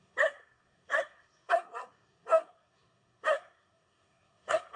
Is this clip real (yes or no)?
no